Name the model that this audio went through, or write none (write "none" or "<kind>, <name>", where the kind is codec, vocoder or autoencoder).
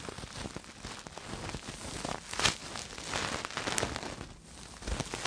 none